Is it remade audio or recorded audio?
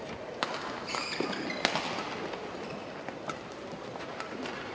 recorded